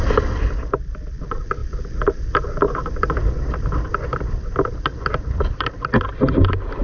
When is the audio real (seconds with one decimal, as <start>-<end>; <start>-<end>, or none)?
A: 0.0-6.8